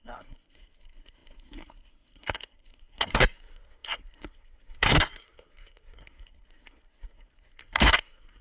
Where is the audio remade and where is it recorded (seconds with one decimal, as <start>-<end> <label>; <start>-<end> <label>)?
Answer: 0.0-8.4 remade